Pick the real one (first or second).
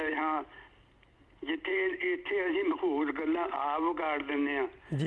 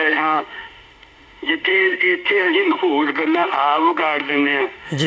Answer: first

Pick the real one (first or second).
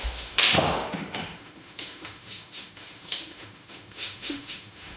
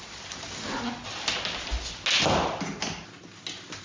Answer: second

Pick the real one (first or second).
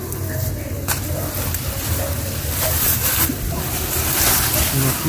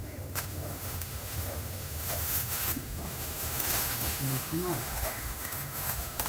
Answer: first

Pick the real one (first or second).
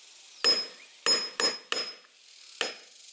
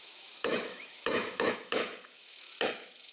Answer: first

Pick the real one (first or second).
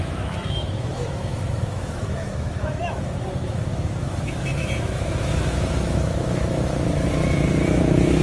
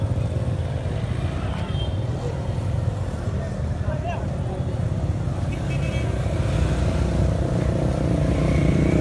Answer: second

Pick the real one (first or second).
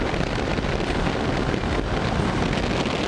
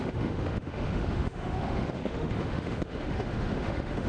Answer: first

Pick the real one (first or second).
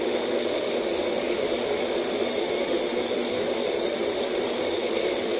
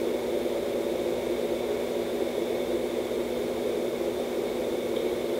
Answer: second